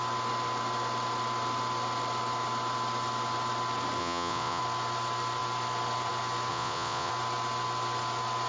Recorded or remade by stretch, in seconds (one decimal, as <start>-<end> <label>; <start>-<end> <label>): 0.0-4.0 recorded; 4.0-4.6 remade; 4.6-6.5 recorded; 6.5-7.1 remade; 7.1-8.5 recorded